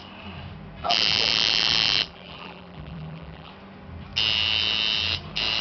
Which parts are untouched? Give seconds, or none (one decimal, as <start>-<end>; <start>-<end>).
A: 0.0-0.8; 3.5-5.6